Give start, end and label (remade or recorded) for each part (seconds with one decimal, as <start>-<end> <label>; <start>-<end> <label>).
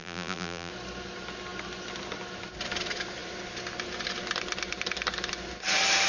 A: 0.0-0.7 remade; 0.7-6.1 recorded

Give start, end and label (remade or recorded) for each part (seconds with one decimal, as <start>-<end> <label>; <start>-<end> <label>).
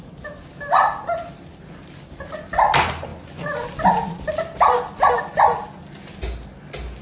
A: 0.0-3.1 recorded; 3.1-4.3 remade; 4.3-7.0 recorded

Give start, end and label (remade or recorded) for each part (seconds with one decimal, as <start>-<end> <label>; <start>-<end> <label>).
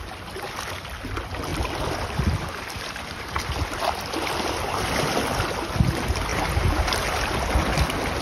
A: 0.0-1.5 recorded; 1.5-3.2 remade; 3.2-8.2 recorded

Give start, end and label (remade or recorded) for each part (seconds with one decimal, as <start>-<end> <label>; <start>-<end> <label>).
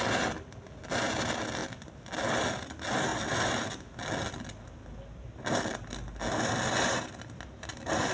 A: 0.0-8.1 recorded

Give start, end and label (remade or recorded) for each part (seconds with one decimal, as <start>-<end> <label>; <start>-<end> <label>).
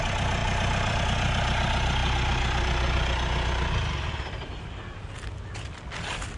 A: 0.0-0.4 recorded; 0.4-1.0 remade; 1.0-6.4 recorded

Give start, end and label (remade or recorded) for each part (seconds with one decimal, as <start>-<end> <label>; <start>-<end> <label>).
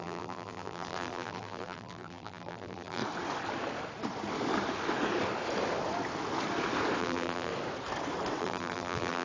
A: 0.0-3.0 remade; 3.0-7.0 recorded; 7.0-7.5 remade; 7.5-8.4 recorded; 8.4-9.2 remade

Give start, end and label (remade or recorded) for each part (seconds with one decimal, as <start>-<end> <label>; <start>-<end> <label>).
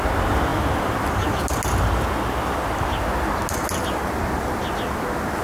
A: 0.0-5.4 recorded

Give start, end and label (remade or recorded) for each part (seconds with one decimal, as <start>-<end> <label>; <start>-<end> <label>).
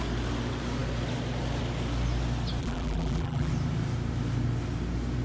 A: 0.0-2.6 recorded; 2.6-3.5 remade; 3.5-5.2 recorded